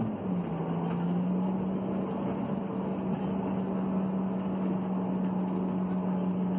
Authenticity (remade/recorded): recorded